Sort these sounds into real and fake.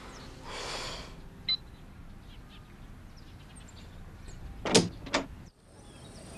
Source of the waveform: real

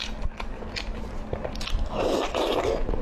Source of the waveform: real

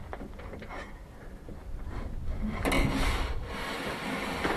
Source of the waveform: real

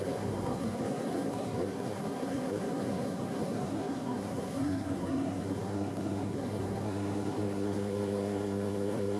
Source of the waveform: fake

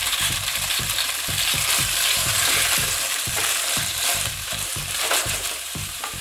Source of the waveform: fake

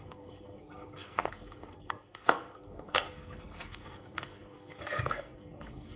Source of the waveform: fake